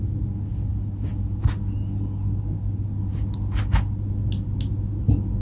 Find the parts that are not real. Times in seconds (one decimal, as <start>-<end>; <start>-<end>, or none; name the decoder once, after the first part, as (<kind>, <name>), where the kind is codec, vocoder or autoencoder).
none